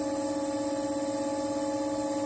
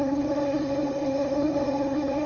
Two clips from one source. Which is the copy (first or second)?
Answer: second